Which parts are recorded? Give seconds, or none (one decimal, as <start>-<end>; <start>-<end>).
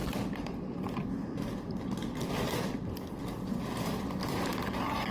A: 0.0-5.1